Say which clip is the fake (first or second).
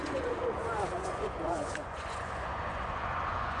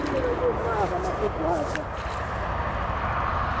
first